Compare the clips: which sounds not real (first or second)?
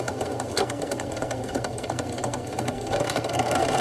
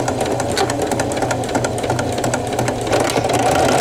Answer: first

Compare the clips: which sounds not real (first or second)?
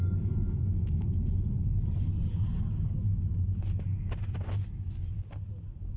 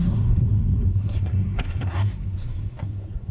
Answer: second